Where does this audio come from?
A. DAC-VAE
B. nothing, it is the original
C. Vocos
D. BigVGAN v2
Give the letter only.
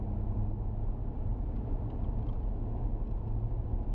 B